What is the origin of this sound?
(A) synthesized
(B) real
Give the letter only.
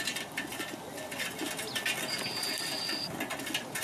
B